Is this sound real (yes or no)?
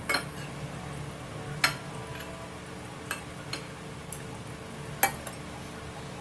yes